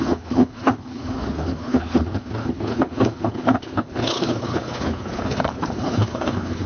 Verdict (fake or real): fake